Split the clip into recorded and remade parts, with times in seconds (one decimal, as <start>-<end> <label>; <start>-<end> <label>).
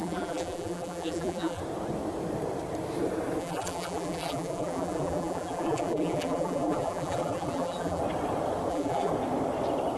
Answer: 0.0-1.6 remade; 1.6-3.4 recorded; 3.4-8.0 remade; 8.0-8.7 recorded; 8.7-9.1 remade; 9.1-10.0 recorded